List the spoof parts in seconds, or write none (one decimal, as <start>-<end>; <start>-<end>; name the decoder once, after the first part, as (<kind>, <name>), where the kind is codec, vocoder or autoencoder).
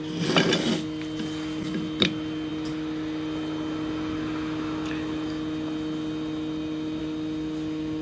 none